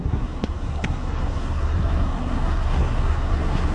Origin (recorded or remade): remade